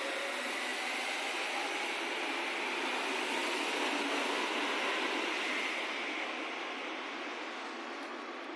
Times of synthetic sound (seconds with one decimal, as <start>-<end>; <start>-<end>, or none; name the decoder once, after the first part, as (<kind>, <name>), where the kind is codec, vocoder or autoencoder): none